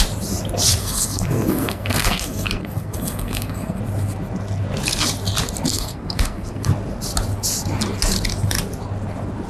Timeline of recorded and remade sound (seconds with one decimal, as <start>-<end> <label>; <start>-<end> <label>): 0.0-0.8 recorded; 0.8-3.8 remade; 3.8-5.7 recorded; 5.7-6.7 remade; 6.7-9.5 recorded